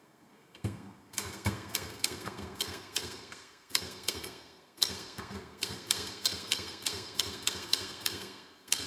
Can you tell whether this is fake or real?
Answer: fake